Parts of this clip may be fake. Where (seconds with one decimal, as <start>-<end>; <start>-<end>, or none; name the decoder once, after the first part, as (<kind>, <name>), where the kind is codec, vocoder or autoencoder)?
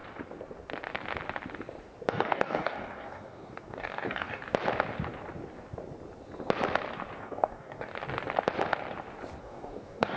2.1-4.4 (codec, DAC); 7.2-7.9; 9.4-10.2